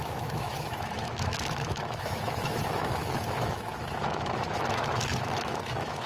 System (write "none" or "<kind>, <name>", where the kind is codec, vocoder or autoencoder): autoencoder, DAC-VAE